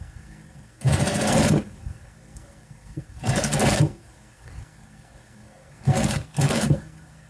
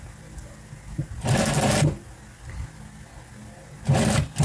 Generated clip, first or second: first